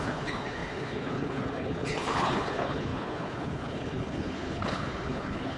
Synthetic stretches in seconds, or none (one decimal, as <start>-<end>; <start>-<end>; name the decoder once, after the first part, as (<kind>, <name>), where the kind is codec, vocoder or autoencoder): 0.0-5.6 (codec, HILCodec)

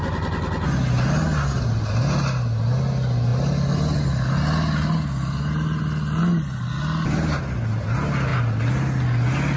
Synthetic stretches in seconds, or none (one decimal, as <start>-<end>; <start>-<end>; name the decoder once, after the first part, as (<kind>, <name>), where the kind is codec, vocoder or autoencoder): none

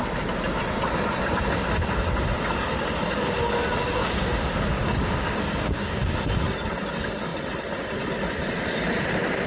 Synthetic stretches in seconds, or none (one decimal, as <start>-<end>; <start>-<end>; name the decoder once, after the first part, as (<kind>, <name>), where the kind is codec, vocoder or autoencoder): 4.0-6.2 (codec, DAC)

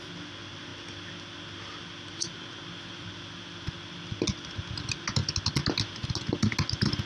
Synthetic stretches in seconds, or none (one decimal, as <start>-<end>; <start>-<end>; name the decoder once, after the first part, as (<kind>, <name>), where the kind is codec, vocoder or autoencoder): none

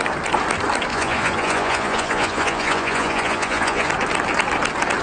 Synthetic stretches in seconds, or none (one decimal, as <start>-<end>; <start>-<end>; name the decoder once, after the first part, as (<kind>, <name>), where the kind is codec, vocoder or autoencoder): 0.9-3.9 (vocoder, Vocos)

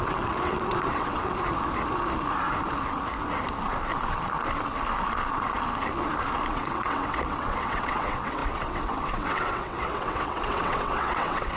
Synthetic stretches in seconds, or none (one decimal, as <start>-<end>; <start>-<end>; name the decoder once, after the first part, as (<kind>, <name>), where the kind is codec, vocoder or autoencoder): 0.0-1.3 (vocoder, WaveNeXt); 6.5-11.6

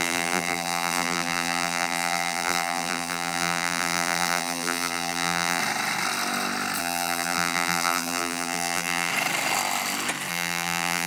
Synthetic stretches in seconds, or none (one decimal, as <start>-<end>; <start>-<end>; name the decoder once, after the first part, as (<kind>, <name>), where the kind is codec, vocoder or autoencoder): 0.0-5.6 (vocoder, BigVGAN v2); 6.8-9.1; 10.3-11.1

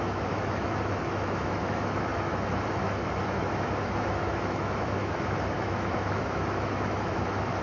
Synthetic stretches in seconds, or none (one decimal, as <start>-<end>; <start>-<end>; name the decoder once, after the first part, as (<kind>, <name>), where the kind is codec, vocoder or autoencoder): 0.0-7.6 (autoencoder, DAC-VAE)